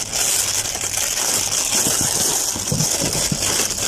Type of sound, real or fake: real